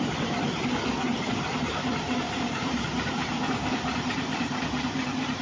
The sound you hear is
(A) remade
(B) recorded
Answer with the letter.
A